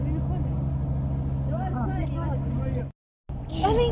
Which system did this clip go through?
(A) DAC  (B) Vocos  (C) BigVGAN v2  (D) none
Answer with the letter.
D